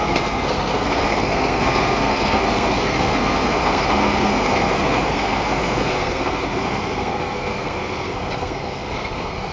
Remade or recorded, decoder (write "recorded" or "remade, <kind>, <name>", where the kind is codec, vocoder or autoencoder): remade, codec, SNAC